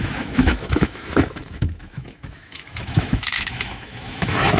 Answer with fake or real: fake